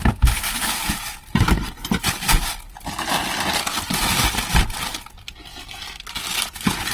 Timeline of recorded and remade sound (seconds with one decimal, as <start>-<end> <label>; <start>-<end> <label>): 0.0-6.9 recorded